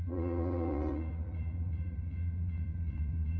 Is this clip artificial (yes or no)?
yes